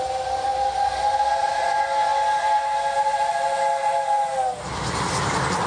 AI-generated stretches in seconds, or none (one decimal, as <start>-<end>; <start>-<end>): none